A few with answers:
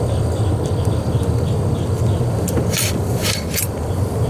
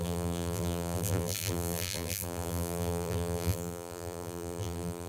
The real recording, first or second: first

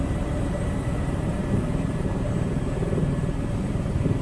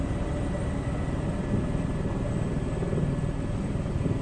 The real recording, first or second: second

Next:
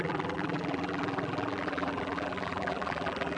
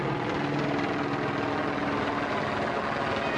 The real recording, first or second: second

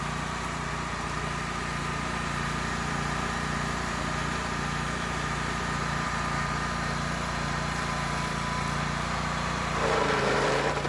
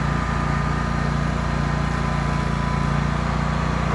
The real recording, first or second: second